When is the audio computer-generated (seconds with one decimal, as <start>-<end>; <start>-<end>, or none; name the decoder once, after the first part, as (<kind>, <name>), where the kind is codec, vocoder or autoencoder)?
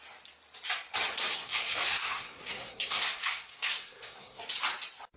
1.3-4.4 (codec, SNAC)